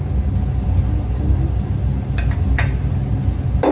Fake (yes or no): no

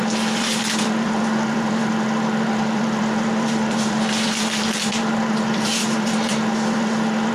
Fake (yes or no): yes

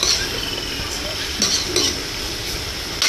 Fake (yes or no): no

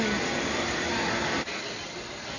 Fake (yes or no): yes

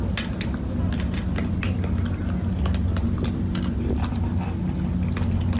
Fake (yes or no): no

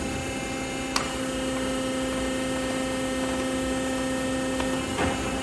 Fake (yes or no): no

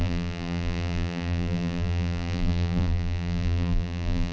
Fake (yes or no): yes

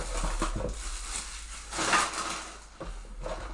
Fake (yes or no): no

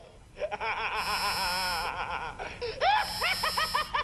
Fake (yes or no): no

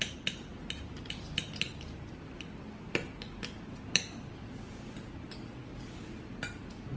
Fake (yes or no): no